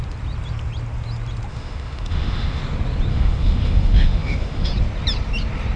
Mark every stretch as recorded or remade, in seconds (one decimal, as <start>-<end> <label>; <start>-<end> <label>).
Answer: 0.0-1.5 recorded; 1.5-2.6 remade; 2.6-3.1 recorded; 3.1-4.7 remade; 4.7-5.8 recorded